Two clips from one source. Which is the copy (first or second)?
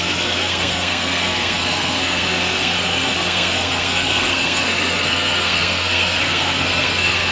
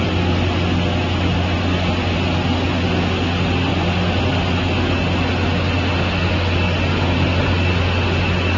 first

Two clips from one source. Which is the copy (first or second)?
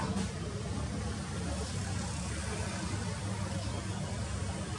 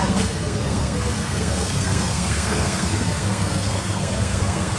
second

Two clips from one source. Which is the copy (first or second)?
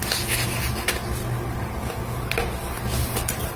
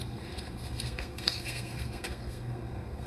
second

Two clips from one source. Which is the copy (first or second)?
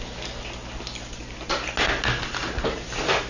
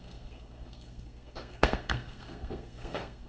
second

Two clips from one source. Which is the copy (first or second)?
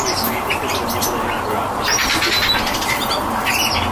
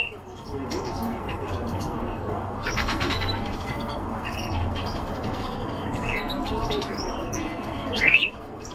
second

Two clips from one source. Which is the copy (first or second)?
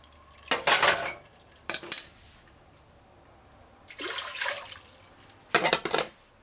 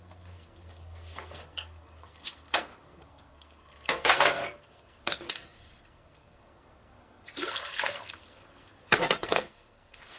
second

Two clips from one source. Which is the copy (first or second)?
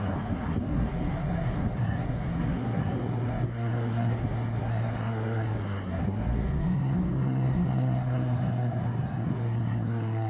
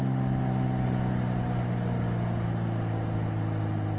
first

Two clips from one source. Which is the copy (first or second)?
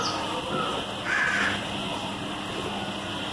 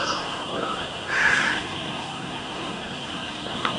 second